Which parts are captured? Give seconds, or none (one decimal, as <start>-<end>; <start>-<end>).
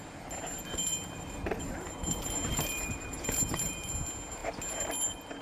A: 0.0-0.7; 3.9-5.4